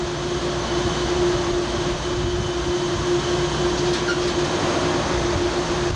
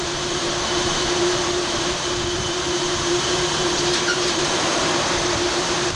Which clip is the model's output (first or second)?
second